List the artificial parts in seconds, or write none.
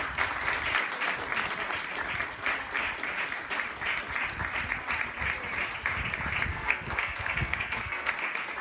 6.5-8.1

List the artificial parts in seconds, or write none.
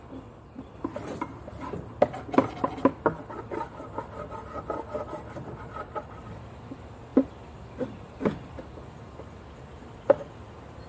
none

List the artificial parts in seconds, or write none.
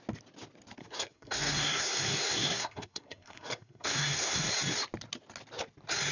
0.8-4.5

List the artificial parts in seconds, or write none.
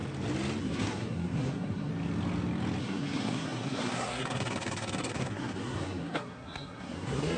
0.6-1.9; 2.8-7.4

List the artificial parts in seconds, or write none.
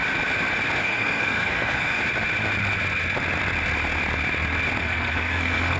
0.8-2.0; 4.8-5.8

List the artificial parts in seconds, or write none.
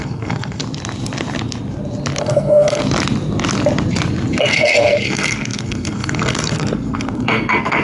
0.0-0.6; 2.2-2.8; 4.4-7.8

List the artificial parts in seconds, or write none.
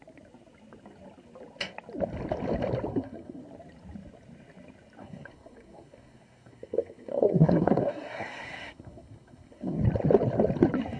2.9-3.4; 5.0-9.8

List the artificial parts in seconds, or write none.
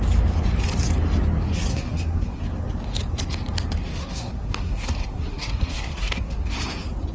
1.7-2.4; 3.9-6.5